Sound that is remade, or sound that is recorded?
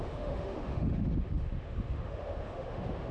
remade